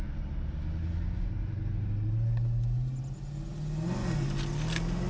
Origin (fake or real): real